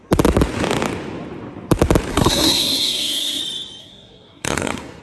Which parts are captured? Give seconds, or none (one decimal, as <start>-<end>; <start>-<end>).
0.0-2.1; 3.4-3.8